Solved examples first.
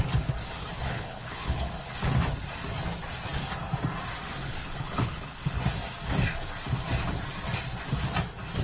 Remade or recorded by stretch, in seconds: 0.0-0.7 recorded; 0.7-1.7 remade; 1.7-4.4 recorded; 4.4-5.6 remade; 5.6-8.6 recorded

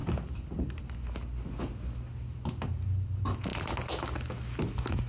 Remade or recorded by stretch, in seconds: 0.0-0.8 remade; 0.8-5.1 recorded

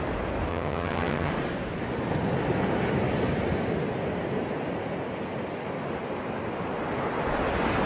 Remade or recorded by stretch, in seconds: 0.0-0.5 recorded; 0.5-1.3 remade; 1.3-7.9 recorded

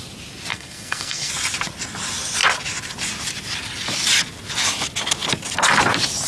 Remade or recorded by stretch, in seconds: 0.0-0.5 recorded; 0.5-1.3 remade; 1.3-6.3 recorded

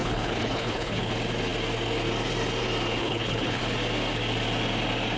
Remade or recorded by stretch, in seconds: 0.0-1.1 remade; 1.1-3.0 recorded; 3.0-3.6 remade; 3.6-5.2 recorded